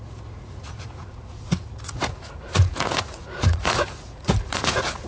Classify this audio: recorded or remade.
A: remade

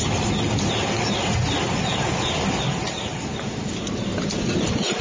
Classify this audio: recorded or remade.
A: recorded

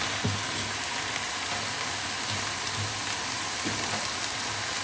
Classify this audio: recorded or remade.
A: recorded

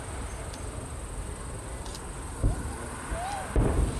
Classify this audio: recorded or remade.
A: recorded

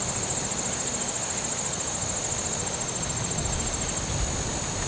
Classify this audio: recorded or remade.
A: recorded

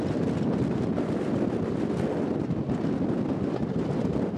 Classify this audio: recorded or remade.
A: recorded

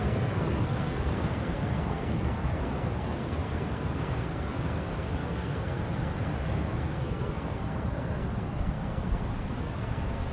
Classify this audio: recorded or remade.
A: remade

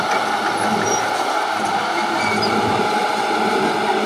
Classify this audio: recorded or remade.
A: recorded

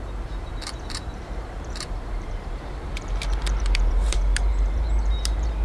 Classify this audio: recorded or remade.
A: remade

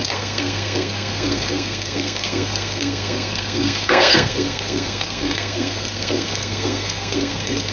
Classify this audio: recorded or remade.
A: remade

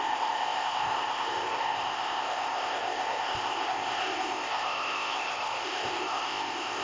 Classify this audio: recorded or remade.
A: remade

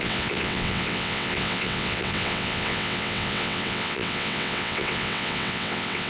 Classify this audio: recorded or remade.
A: remade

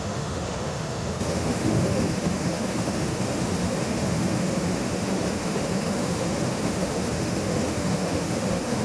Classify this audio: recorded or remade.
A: remade